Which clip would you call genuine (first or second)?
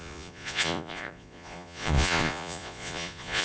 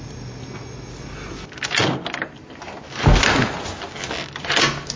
second